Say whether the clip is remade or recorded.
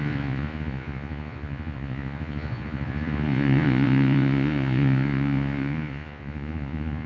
remade